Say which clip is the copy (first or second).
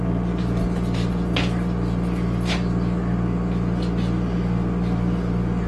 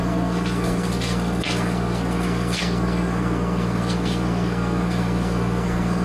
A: second